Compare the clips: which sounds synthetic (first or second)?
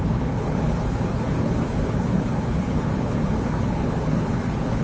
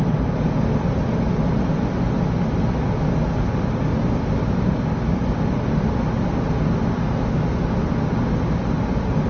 first